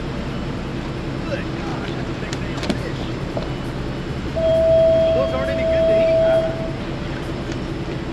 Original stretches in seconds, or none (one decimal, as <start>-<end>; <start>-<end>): 0.0-1.7; 3.4-8.1